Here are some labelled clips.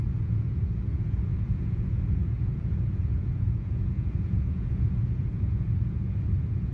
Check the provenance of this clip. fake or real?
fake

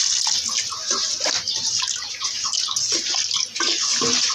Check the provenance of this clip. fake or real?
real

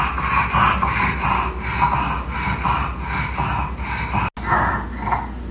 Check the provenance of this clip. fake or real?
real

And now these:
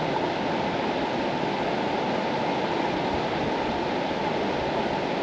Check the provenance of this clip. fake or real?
real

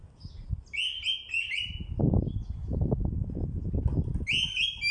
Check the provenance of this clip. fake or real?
real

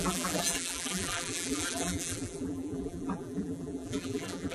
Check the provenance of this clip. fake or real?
fake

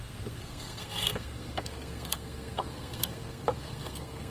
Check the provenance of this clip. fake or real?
fake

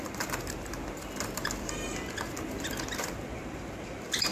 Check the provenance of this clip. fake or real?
real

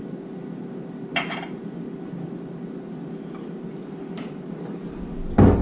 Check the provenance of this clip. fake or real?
real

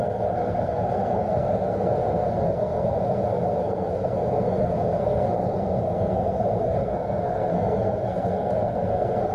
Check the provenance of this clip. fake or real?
fake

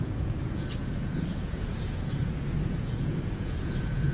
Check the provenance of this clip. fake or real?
fake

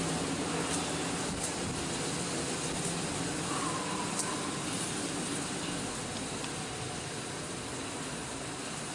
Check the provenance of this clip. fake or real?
real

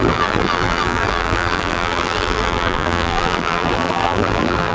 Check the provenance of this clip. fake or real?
fake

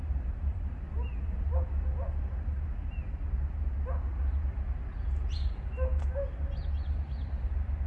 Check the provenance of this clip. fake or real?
real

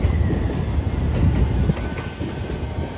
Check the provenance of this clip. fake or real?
real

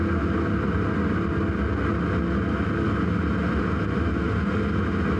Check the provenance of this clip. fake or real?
real